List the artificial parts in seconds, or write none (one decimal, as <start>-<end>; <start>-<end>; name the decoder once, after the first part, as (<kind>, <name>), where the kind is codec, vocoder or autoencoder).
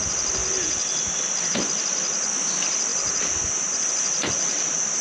0.4-1.2 (vocoder, BigVGAN v2); 2.9-5.0